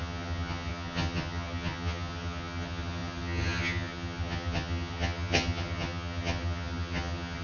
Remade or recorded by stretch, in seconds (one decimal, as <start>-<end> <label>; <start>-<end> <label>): 0.0-7.4 remade